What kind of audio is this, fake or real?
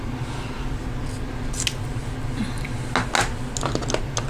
real